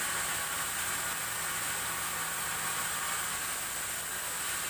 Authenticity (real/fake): real